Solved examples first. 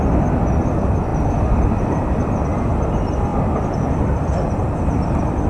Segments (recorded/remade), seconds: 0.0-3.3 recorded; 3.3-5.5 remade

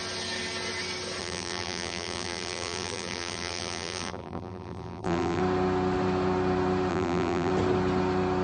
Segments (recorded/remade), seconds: 0.0-1.2 recorded; 1.2-5.4 remade; 5.4-6.9 recorded; 6.9-7.5 remade; 7.5-8.4 recorded

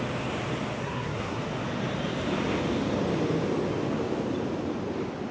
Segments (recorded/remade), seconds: 0.0-0.8 recorded; 0.8-1.4 remade; 1.4-5.3 recorded

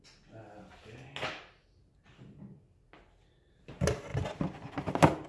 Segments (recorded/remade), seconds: 0.0-5.3 recorded

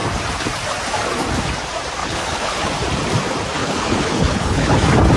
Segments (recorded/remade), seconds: 0.0-2.0 recorded; 2.0-2.7 remade; 2.7-3.6 recorded; 3.6-4.8 remade; 4.8-5.2 recorded

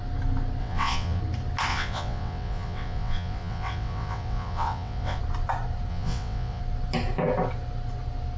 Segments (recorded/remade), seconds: 0.0-0.6 recorded; 0.6-1.2 remade; 1.2-1.7 recorded; 1.7-5.2 remade; 5.2-5.9 recorded; 5.9-6.6 remade; 6.6-8.4 recorded